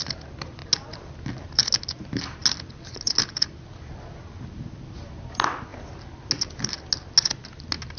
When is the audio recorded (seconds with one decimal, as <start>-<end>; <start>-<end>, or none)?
0.0-8.0